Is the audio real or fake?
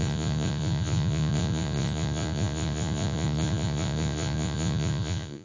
fake